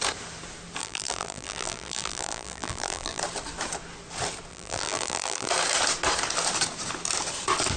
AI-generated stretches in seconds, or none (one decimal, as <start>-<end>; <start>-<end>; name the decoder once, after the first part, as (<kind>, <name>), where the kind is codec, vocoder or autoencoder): 0.8-3.2 (vocoder, BigVGAN v2); 4.5-5.5